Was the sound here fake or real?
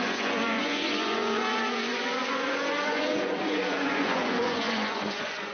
fake